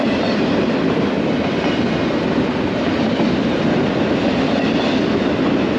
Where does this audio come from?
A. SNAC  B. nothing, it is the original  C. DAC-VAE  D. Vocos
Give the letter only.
B